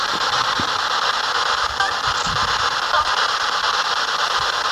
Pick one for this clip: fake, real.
fake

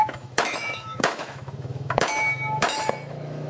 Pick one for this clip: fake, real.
fake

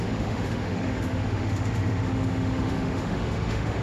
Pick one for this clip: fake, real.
fake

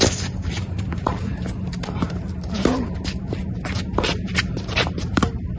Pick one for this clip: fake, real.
fake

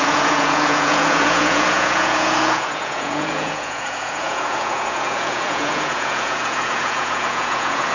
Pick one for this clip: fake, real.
fake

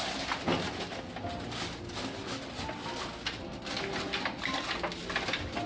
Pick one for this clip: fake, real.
real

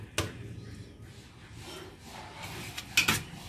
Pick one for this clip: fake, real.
real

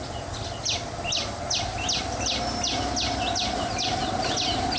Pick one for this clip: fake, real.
real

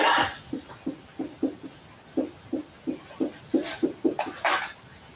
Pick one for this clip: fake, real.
real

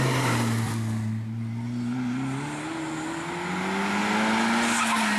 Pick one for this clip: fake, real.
real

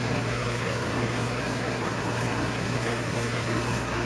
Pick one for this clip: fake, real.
fake